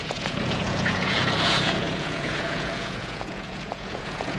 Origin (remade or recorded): remade